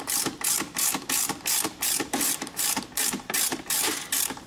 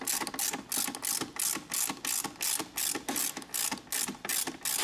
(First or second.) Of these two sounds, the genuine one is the second